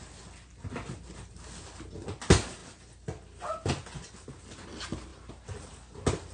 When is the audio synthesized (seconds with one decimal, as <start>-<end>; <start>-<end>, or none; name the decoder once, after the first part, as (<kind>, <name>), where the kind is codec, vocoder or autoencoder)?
none